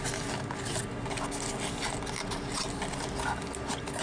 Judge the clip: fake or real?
real